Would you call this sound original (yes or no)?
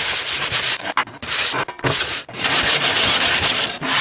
yes